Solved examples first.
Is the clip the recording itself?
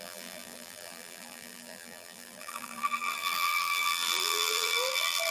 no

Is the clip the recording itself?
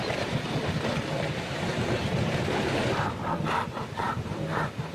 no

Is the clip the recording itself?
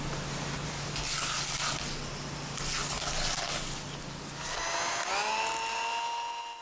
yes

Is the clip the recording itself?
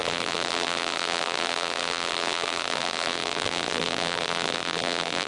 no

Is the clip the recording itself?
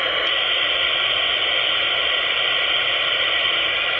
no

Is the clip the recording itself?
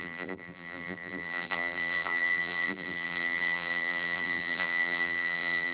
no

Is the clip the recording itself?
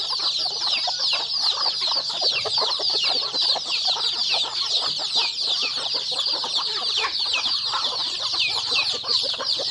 no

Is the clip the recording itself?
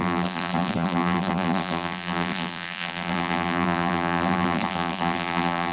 no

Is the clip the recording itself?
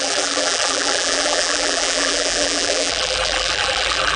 no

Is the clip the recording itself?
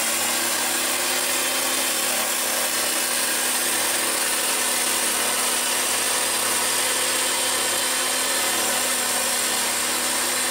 yes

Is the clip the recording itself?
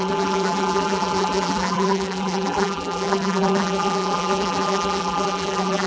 no